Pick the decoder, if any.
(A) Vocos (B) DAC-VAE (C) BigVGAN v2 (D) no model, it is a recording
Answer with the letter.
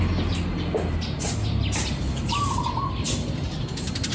D